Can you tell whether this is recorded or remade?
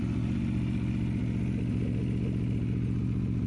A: recorded